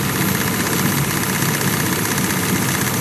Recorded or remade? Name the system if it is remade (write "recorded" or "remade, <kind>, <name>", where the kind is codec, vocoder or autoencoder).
recorded